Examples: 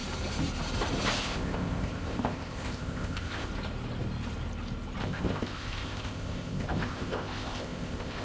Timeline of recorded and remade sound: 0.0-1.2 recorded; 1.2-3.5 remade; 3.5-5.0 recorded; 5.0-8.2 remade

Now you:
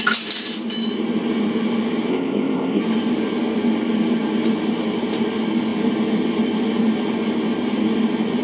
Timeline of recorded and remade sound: 0.0-2.1 recorded; 2.1-2.8 remade; 2.8-8.4 recorded

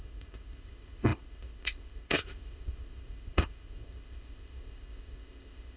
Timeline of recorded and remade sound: 0.0-5.8 remade

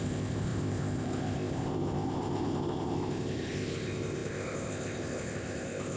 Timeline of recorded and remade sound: 0.0-6.0 remade

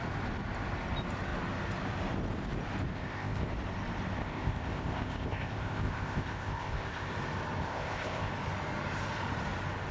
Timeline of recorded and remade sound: 0.0-2.9 recorded; 2.9-3.5 remade; 3.5-4.2 recorded; 4.2-7.1 remade; 7.1-7.6 recorded; 7.6-8.3 remade; 8.3-9.9 recorded